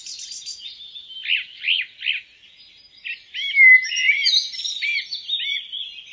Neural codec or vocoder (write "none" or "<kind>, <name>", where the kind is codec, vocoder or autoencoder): none